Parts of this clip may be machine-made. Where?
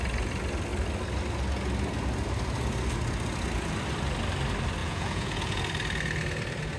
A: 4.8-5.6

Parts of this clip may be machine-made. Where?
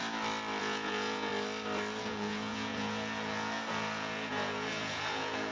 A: 0.6-1.3; 2.0-5.5